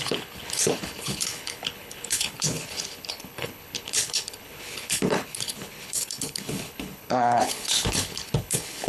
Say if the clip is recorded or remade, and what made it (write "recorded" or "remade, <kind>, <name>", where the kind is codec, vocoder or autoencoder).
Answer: remade, codec, HILCodec